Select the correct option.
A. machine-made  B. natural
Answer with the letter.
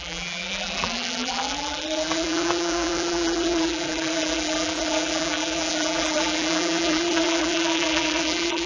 A